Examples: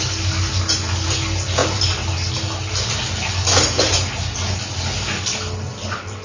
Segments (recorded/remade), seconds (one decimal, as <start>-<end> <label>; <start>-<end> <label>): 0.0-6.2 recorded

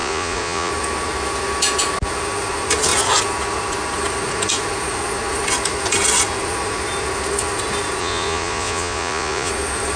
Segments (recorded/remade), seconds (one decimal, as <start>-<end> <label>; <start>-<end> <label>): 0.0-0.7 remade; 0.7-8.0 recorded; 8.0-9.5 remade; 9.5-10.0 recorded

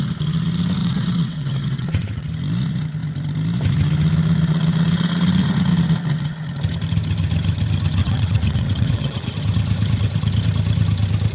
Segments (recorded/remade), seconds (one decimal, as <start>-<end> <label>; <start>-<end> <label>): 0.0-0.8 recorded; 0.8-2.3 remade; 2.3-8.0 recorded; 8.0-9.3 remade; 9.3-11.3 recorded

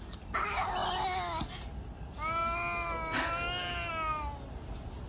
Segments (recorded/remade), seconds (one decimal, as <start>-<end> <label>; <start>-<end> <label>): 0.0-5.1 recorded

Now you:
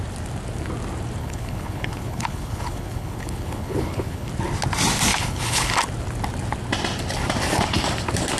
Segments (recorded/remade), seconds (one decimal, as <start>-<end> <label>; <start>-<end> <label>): 0.0-1.2 recorded; 1.2-4.3 remade; 4.3-5.1 recorded; 5.1-5.7 remade; 5.7-8.4 recorded

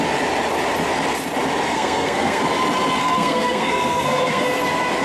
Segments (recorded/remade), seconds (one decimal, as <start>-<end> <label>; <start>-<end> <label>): 0.0-1.7 recorded; 1.7-2.4 remade; 2.4-3.0 recorded; 3.0-4.6 remade; 4.6-5.0 recorded

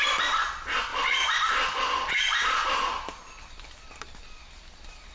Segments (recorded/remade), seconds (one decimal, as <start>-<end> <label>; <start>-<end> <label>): 0.0-0.9 recorded; 0.9-4.0 remade; 4.0-5.1 recorded

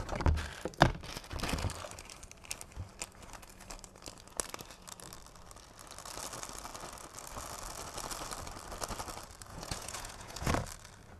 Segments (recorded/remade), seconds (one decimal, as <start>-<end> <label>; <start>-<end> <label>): 0.0-9.5 recorded; 9.5-10.5 remade; 10.5-11.2 recorded